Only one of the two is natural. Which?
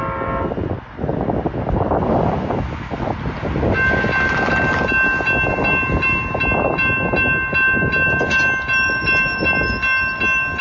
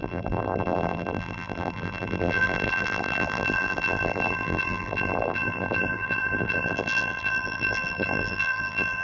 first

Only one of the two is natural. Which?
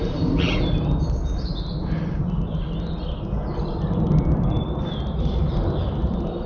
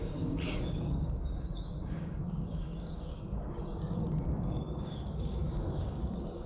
first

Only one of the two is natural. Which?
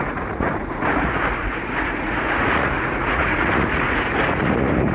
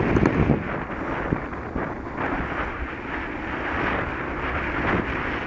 second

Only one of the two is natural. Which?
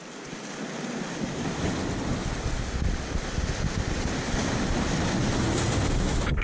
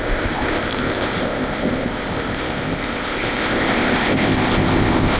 first